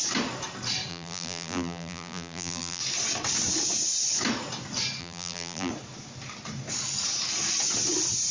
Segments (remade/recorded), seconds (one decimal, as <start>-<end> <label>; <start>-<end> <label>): 0.0-0.9 recorded; 0.9-2.8 remade; 2.8-5.0 recorded; 5.0-5.7 remade; 5.7-8.3 recorded